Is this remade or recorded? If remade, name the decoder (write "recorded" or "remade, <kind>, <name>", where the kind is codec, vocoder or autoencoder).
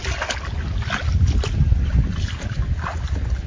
recorded